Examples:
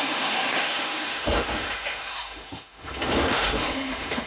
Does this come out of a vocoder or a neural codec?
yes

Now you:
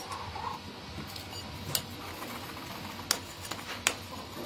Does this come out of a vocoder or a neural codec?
no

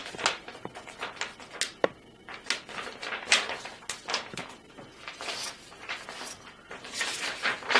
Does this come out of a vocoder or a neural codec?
no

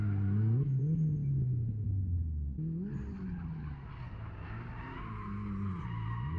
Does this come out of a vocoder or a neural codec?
no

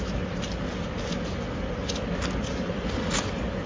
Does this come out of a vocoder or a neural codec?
no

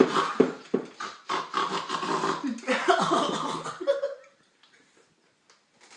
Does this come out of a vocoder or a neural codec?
no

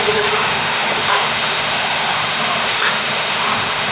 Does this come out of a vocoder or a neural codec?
yes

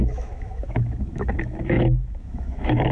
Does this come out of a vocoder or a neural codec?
yes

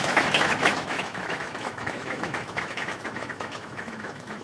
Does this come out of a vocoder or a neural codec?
yes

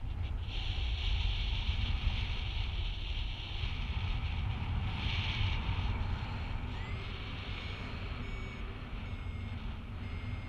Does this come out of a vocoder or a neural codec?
no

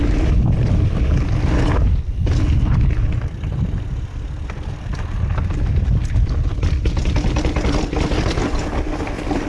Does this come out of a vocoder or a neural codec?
no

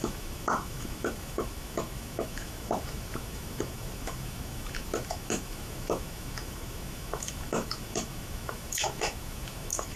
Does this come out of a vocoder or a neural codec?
yes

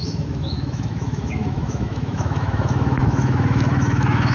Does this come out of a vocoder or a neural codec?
yes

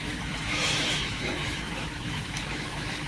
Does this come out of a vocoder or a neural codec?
yes